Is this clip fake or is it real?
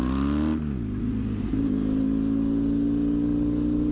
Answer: real